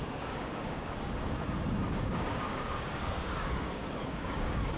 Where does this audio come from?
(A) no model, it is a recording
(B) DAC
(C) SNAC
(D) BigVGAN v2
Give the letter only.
B